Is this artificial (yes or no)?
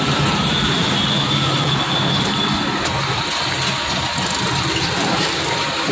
no